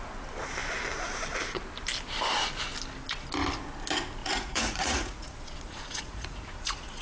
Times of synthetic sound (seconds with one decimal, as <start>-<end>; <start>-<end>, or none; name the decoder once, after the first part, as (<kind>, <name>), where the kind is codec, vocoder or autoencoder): 4.2-7.0 (vocoder, Vocos)